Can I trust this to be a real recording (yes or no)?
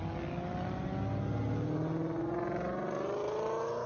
yes